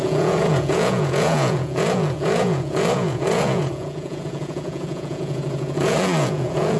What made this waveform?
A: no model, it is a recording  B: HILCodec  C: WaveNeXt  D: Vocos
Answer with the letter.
D